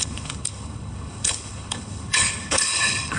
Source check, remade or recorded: remade